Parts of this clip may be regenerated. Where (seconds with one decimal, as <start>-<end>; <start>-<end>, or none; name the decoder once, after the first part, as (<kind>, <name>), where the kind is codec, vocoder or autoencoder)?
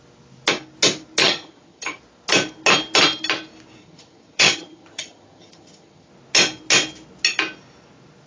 1.2-2.0 (vocoder, HiFi-GAN); 3.8-6.1